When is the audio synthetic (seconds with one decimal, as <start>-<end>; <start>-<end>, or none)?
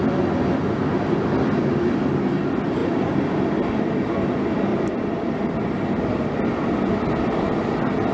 2.8-3.5; 4.7-8.1